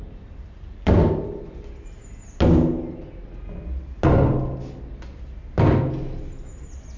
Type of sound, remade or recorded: recorded